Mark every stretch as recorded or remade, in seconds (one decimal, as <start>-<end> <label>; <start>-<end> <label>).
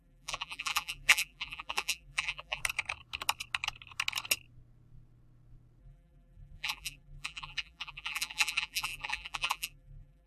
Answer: 0.0-2.6 remade; 2.6-5.8 recorded; 5.8-10.3 remade